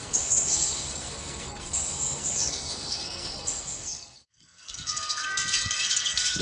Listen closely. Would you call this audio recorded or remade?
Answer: remade